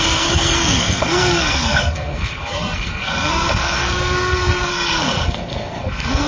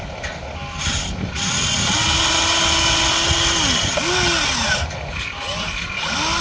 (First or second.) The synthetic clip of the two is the first